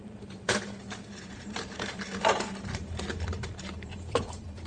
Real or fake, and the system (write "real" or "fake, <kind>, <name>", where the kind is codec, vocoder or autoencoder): fake, vocoder, BigVGAN v2